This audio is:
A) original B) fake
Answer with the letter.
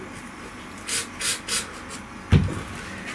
A